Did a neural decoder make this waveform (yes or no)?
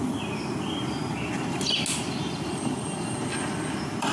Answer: no